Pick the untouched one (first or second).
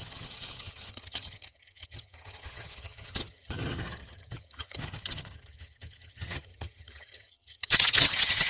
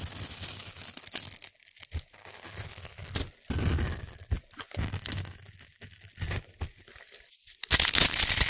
second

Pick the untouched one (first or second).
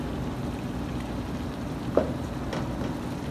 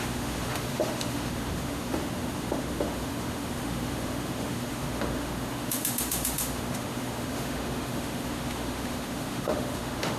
first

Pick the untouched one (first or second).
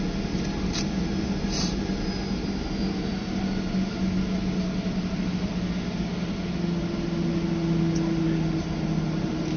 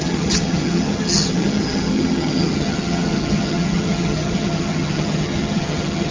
first